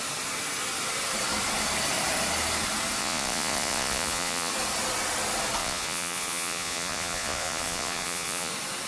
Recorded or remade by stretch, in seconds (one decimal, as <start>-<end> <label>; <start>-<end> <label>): 0.0-3.0 recorded; 3.0-4.5 remade; 4.5-5.6 recorded; 5.6-8.5 remade; 8.5-8.9 recorded

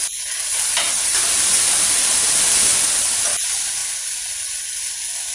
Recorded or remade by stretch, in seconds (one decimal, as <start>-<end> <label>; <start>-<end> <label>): 0.0-5.3 recorded

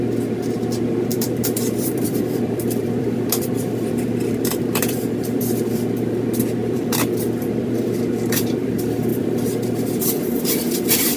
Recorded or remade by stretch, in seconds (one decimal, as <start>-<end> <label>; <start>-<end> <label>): 0.0-1.1 recorded; 1.1-5.4 remade; 5.4-6.6 recorded; 6.6-8.7 remade; 8.7-9.1 recorded; 9.1-10.2 remade; 10.2-11.2 recorded

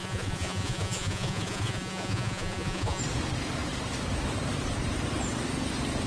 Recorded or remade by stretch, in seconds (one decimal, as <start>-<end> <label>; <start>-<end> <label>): 0.0-3.0 remade; 3.0-6.1 recorded